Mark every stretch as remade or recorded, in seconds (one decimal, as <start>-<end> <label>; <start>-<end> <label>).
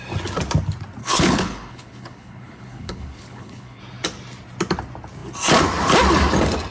0.0-1.0 recorded; 1.0-3.8 remade; 3.8-6.7 recorded